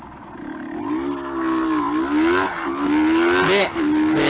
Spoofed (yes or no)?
no